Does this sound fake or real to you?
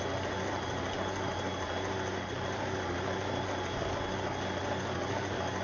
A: real